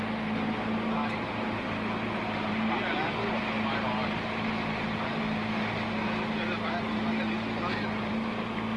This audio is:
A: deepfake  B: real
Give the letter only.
B